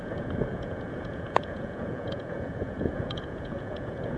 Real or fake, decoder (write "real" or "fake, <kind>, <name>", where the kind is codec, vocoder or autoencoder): fake, vocoder, Vocos